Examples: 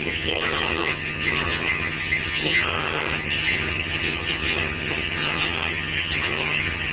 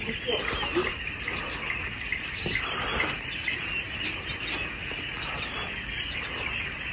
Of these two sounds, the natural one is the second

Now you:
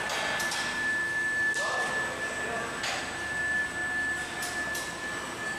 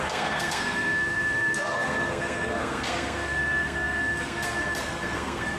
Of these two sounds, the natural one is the first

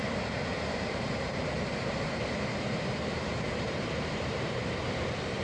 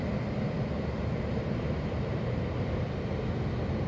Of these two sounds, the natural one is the second